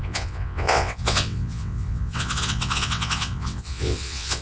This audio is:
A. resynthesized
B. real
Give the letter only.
A